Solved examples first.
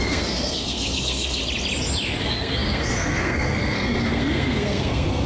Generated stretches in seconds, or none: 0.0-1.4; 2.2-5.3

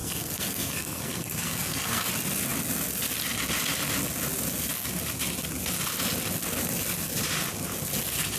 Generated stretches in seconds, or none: 0.0-2.1

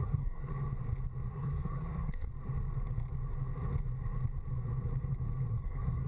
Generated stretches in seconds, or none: 0.0-0.5; 1.3-2.3; 5.5-6.1

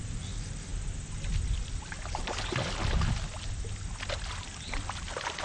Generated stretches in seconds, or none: none